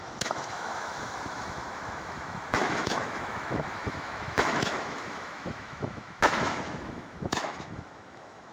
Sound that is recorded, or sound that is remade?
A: remade